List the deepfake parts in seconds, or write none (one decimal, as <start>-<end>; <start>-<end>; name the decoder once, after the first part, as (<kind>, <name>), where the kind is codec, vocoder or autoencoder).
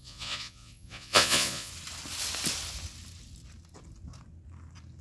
0.0-1.7 (vocoder, Vocos)